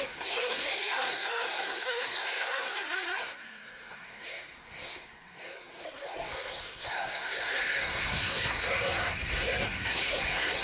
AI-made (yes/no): yes